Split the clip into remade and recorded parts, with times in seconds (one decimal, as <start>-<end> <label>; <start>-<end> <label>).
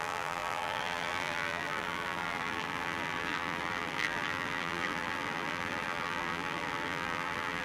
0.0-7.6 remade